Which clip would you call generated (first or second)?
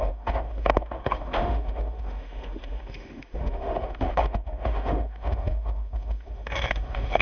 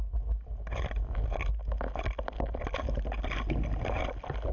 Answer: first